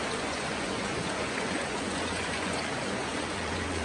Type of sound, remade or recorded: remade